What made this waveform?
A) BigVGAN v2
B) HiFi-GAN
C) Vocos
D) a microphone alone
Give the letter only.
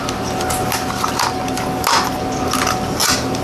D